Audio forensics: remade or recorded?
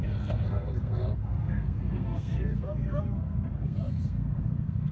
remade